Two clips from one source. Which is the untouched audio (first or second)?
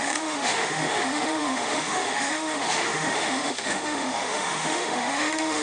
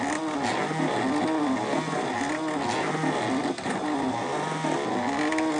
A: second